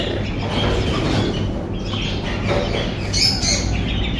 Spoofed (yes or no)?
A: no